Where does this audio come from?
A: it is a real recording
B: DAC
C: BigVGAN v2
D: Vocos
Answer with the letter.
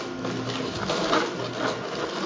A